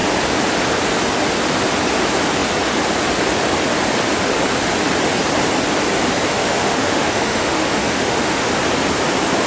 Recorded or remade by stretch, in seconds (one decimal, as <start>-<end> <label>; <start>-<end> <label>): 0.0-6.3 recorded; 6.3-8.5 remade; 8.5-9.5 recorded